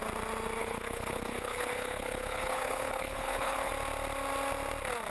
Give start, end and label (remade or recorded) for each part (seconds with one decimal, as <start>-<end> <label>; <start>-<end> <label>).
0.0-0.6 recorded; 0.6-3.7 remade; 3.7-5.1 recorded